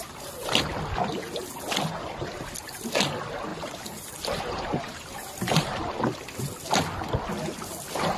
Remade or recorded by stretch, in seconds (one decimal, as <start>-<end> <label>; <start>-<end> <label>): 0.0-3.5 recorded; 3.5-6.0 remade; 6.0-8.2 recorded